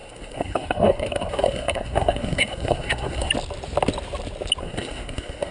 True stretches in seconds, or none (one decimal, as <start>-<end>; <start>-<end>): 3.3-4.6